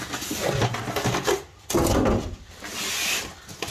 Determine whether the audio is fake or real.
real